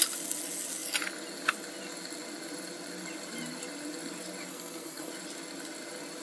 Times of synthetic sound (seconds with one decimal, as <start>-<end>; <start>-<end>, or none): 4.5-5.1